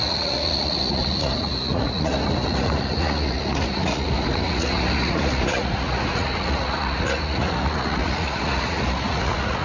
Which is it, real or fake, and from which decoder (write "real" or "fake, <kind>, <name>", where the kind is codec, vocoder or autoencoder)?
fake, vocoder, Vocos